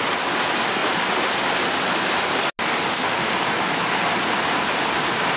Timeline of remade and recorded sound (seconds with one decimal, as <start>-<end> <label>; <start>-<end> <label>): 0.0-2.9 recorded; 2.9-3.4 remade; 3.4-5.4 recorded